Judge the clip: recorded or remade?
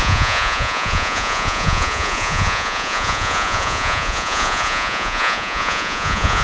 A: remade